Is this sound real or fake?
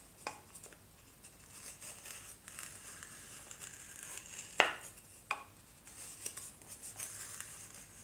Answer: real